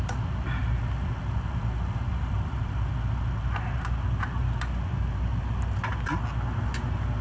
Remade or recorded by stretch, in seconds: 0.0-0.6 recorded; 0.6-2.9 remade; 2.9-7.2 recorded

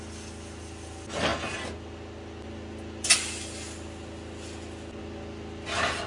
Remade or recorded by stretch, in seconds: 0.0-6.1 recorded

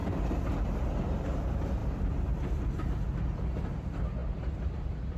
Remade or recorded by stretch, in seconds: 0.0-5.2 recorded

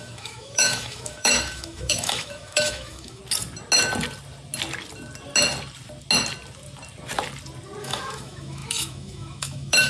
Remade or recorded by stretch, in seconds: 0.0-3.2 remade; 3.2-7.8 recorded; 7.8-9.9 remade

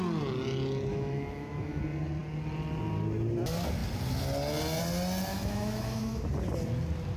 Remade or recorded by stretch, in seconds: 0.0-0.9 recorded; 0.9-1.8 remade; 1.8-5.3 recorded; 5.3-6.2 remade; 6.2-7.2 recorded